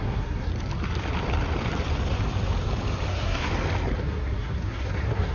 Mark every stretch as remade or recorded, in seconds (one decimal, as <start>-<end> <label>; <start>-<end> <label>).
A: 0.0-0.5 remade; 0.5-3.1 recorded; 3.1-3.5 remade; 3.5-4.0 recorded; 4.0-5.3 remade